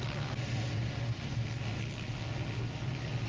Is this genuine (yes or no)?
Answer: yes